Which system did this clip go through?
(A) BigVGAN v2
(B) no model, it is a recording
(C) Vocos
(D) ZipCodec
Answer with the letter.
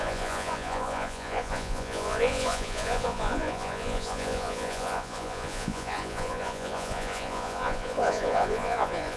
C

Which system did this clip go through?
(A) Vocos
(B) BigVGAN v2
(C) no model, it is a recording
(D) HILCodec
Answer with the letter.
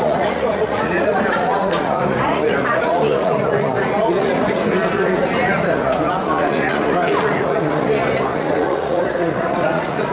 A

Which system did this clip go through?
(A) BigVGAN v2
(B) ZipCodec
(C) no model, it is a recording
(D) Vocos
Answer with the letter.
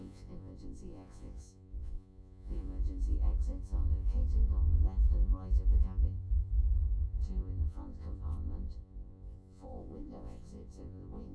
D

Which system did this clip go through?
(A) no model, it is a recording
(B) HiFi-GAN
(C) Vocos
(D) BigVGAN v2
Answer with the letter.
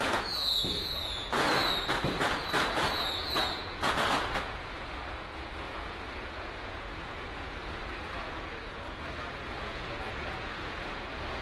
C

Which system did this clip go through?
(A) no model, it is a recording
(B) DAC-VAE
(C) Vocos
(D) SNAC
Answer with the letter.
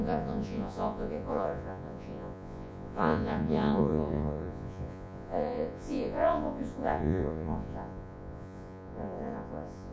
C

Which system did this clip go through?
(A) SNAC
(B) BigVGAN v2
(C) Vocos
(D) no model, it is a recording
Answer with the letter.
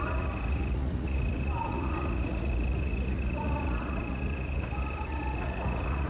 C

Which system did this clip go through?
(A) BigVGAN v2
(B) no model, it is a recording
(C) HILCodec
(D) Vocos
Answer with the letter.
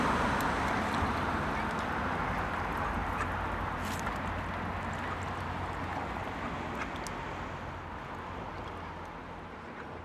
B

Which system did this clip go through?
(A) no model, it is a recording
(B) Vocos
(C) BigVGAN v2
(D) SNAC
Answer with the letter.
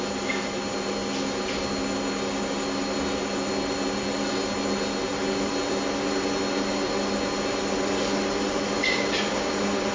A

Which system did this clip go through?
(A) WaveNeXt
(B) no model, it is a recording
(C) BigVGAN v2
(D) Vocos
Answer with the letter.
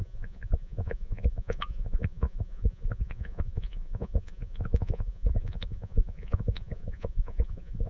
D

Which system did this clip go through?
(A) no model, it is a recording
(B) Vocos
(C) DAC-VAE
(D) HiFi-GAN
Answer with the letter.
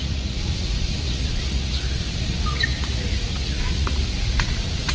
B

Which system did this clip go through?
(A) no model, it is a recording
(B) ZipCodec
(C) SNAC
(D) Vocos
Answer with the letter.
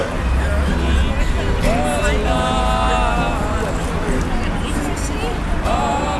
A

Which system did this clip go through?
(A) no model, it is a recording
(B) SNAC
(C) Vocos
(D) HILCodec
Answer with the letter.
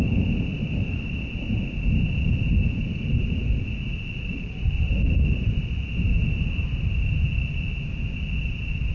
A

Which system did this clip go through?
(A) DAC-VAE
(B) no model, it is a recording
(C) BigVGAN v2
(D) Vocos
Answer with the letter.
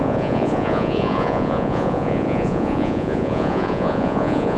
D